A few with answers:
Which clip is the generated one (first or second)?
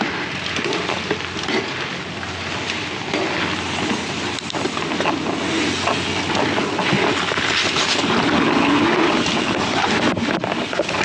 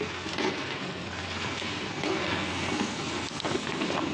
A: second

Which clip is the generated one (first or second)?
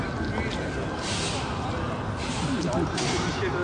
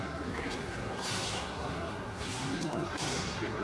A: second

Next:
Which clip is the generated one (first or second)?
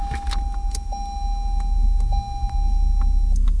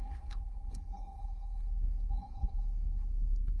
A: second